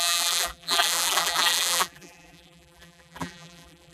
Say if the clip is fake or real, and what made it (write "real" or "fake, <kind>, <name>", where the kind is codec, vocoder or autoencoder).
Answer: fake, vocoder, BigVGAN v2